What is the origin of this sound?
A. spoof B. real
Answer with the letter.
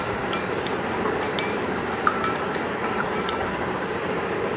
B